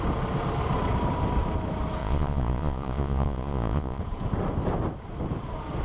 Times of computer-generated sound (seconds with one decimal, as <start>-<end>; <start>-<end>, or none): 2.0-4.0